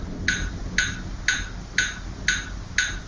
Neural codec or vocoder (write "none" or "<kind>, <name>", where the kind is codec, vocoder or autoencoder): none